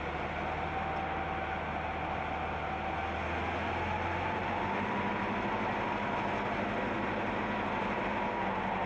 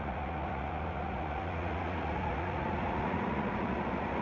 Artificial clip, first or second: second